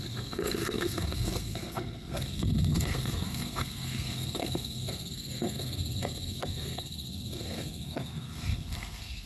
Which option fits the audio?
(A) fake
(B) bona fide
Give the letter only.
A